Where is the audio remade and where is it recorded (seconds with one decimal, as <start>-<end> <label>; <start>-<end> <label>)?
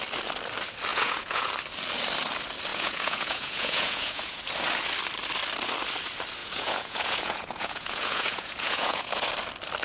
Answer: 0.0-0.9 recorded; 0.9-1.5 remade; 1.5-2.7 recorded; 2.7-4.4 remade; 4.4-6.4 recorded; 6.4-9.3 remade; 9.3-9.8 recorded